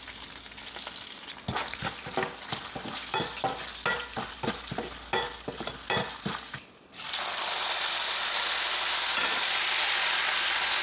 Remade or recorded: recorded